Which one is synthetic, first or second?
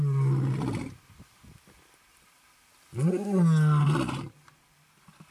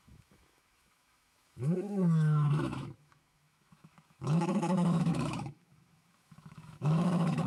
second